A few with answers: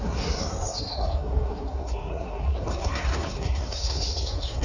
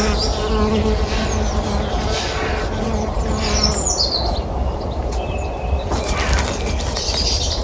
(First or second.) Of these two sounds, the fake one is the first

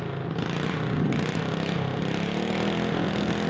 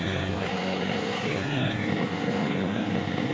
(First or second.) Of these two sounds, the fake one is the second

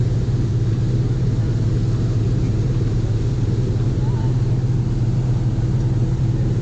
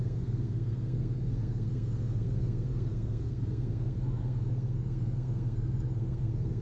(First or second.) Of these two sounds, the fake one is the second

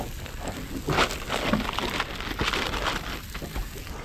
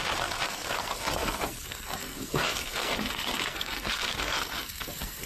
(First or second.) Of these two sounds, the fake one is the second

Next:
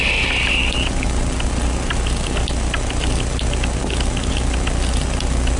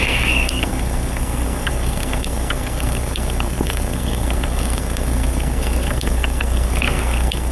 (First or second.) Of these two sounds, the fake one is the second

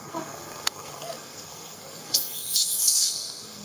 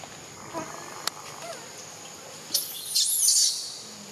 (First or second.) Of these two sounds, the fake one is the first